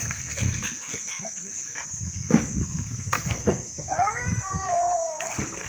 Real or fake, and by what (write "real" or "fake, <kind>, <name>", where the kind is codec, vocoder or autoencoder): fake, codec, SNAC